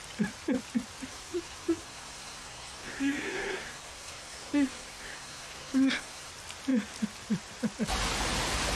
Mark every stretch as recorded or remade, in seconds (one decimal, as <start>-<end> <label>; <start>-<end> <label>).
0.0-1.1 recorded; 1.1-6.3 remade; 6.3-8.8 recorded